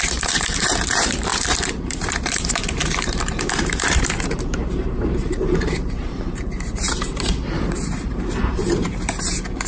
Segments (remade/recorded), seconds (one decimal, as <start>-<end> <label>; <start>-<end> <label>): 0.0-9.7 remade

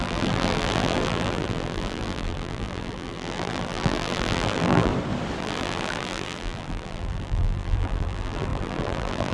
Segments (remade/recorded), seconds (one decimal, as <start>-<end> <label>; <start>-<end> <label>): 0.0-4.9 remade; 4.9-5.4 recorded; 5.4-9.3 remade

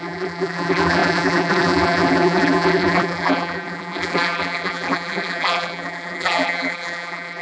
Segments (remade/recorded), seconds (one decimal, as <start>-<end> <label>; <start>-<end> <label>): 0.0-7.4 remade

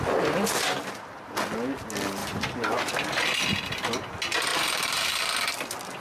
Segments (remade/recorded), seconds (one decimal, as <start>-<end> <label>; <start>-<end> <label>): 0.0-0.6 recorded; 0.6-1.1 remade; 1.1-2.2 recorded; 2.2-2.9 remade; 2.9-4.5 recorded; 4.5-5.2 remade; 5.2-6.0 recorded